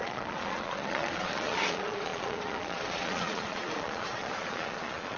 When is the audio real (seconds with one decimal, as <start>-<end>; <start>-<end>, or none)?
none